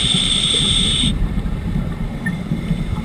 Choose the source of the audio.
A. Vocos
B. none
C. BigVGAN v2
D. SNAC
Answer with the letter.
C